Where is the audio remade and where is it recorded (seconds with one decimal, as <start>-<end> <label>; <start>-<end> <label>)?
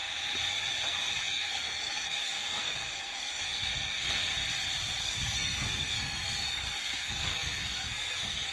0.0-0.5 recorded; 0.5-4.3 remade; 4.3-5.0 recorded; 5.0-8.5 remade